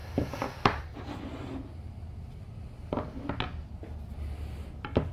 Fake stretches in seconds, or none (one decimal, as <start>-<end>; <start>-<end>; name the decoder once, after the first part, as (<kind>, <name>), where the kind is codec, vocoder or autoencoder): 0.8-1.6 (vocoder, BigVGAN v2)